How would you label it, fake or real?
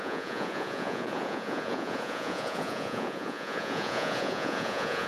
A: fake